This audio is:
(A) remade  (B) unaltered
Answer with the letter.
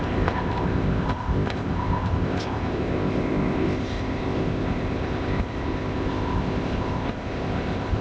A